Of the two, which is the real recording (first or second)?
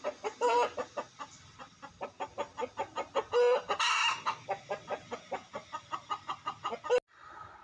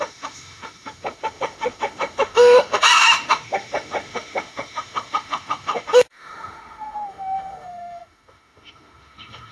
first